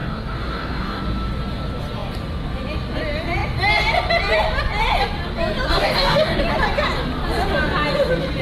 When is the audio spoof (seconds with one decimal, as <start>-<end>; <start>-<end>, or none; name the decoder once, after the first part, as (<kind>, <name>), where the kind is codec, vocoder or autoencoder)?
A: 0.0-1.0 (codec, DAC); 5.7-6.4